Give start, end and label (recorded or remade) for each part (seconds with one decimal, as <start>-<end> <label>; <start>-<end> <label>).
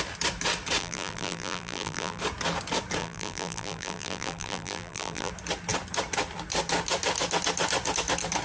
0.0-0.8 recorded; 0.8-2.2 remade; 2.2-3.0 recorded; 3.0-5.3 remade; 5.3-8.4 recorded